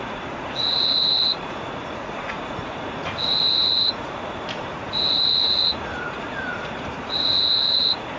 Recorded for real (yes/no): no